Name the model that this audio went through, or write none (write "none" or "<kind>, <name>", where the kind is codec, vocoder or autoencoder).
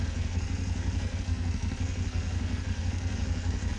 codec, SNAC